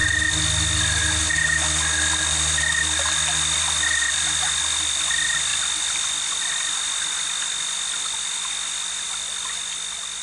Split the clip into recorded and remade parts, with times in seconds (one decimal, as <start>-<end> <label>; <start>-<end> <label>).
0.0-10.2 recorded